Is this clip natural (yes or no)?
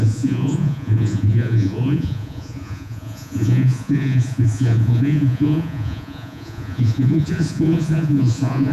no